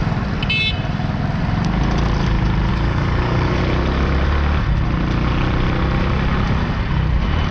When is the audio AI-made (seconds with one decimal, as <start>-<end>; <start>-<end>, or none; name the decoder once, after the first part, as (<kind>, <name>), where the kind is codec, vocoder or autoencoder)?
2.7-3.6 (codec, DAC)